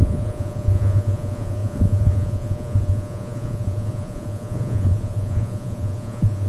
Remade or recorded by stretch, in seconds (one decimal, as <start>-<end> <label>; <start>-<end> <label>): 0.0-6.5 remade